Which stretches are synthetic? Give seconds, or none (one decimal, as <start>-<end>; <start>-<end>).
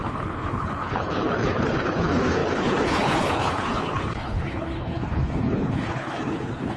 0.0-6.8